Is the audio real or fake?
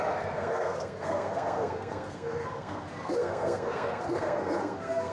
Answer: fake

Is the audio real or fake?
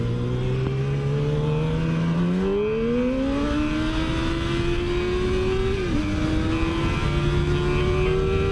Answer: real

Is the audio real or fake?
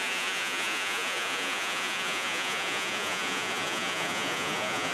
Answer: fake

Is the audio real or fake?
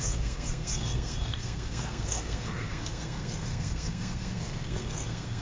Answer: fake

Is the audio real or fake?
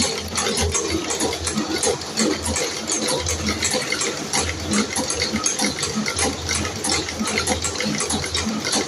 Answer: real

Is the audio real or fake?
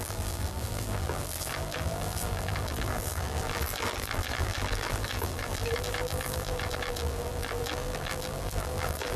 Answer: fake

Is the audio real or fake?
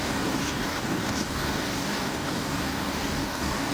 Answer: fake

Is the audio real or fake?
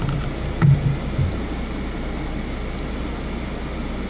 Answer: real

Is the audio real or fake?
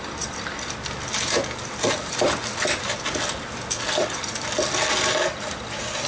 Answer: real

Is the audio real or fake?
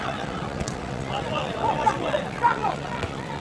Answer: fake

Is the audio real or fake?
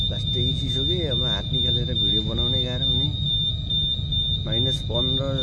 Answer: real